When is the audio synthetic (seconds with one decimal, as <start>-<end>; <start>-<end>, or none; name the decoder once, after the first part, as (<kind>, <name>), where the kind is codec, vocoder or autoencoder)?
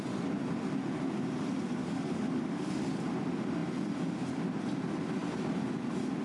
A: 1.8-2.9 (codec, DAC)